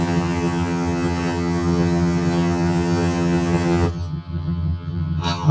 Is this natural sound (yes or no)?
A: no